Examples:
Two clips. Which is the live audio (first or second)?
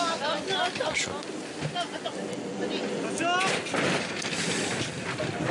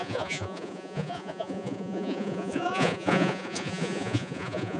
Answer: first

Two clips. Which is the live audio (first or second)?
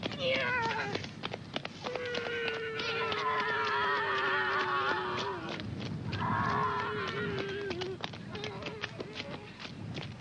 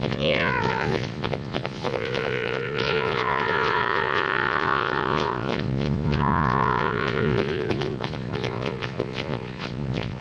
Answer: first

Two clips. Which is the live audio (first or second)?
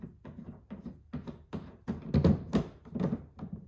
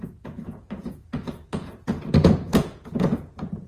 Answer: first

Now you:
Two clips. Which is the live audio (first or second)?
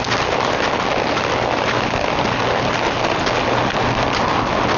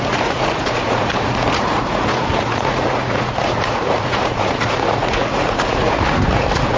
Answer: first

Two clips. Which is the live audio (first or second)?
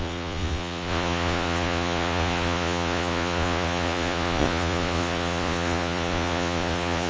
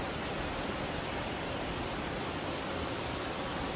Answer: second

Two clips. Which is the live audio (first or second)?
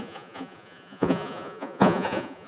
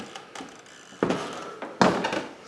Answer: second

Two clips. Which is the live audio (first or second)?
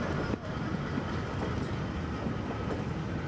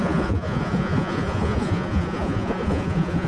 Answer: first